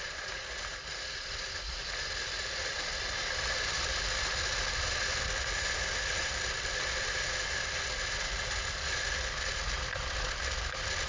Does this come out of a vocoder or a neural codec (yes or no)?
no